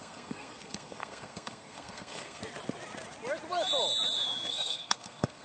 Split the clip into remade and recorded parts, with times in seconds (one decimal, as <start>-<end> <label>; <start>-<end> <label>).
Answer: 0.0-2.4 remade; 2.4-4.5 recorded; 4.5-5.4 remade